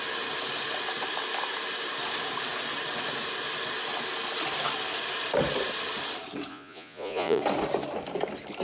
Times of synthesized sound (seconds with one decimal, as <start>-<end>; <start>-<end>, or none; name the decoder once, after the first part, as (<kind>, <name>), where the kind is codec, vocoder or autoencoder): 6.5-7.4 (vocoder, Vocos)